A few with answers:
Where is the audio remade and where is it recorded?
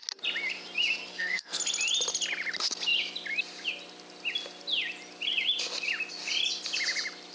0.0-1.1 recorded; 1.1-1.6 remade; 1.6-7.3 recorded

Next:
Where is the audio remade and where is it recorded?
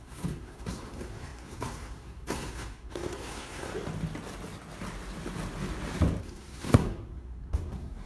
0.0-3.7 remade; 3.7-6.2 recorded; 6.2-8.1 remade